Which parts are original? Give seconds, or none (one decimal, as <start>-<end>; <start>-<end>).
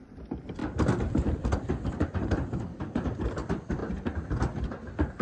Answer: 0.0-0.6; 1.2-5.2